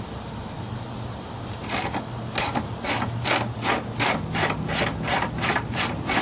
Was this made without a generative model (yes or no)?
no